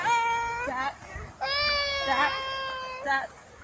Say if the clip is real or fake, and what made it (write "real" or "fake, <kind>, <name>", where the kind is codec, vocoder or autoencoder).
real